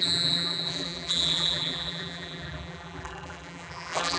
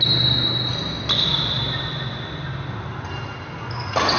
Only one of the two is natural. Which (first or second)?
second